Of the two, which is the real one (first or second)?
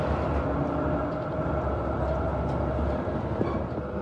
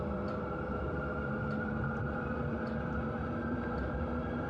first